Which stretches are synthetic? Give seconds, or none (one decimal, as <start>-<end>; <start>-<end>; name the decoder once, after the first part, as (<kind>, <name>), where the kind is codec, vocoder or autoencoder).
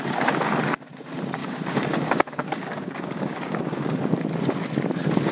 1.4-4.0 (codec, DAC)